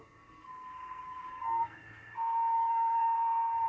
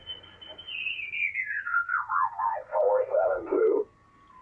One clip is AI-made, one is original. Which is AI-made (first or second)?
first